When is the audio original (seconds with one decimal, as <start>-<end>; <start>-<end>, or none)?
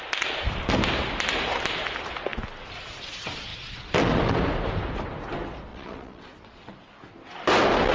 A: 0.0-5.7; 6.7-7.9